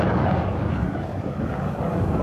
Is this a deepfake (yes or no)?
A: yes